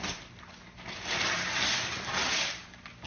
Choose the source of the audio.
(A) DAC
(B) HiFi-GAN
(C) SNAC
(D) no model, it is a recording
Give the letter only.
D